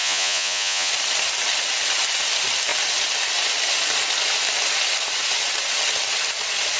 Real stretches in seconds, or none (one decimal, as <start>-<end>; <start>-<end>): 0.9-6.8